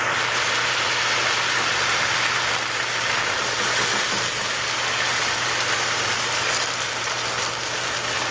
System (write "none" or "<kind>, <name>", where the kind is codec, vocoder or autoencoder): none